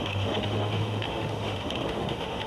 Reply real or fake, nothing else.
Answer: fake